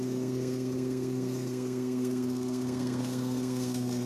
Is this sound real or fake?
fake